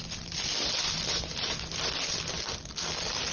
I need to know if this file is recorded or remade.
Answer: recorded